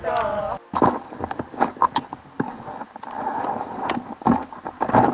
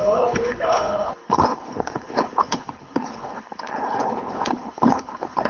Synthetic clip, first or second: second